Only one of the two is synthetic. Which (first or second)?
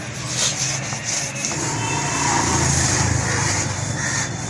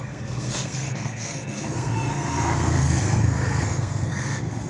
second